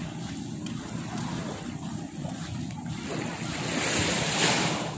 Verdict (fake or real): real